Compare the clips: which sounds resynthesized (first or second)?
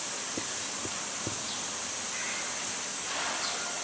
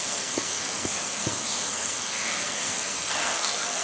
second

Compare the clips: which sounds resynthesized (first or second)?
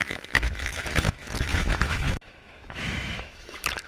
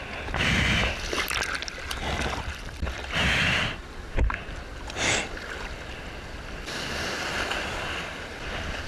first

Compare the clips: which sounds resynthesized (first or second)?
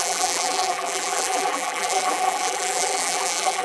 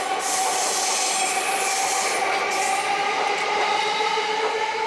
first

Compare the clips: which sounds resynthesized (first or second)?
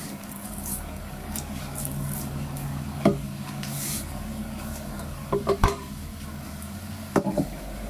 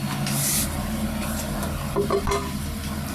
first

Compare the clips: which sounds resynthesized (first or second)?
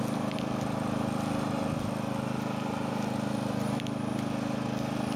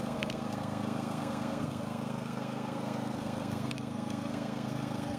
second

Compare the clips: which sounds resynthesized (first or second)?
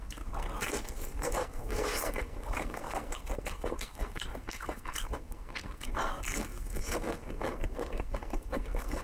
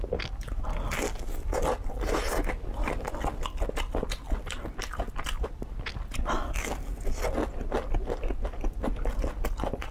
first